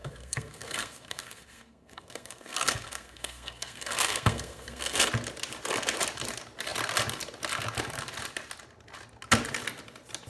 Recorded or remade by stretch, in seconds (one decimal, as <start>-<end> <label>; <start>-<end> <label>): 0.0-5.1 remade; 5.1-10.3 recorded